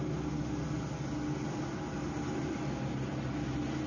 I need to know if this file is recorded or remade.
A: recorded